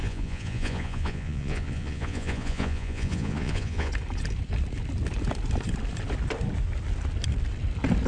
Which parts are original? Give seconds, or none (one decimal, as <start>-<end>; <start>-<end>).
3.9-8.1